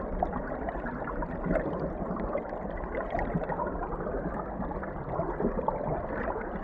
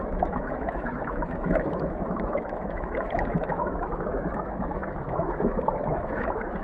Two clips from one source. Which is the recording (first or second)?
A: first